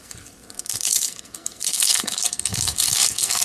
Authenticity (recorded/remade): remade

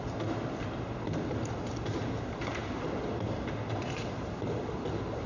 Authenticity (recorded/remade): recorded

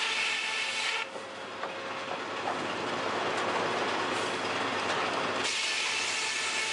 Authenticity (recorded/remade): recorded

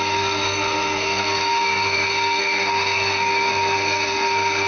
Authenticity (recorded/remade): remade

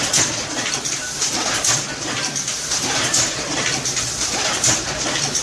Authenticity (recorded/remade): recorded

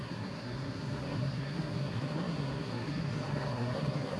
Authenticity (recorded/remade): remade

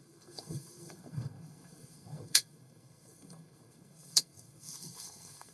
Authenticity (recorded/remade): remade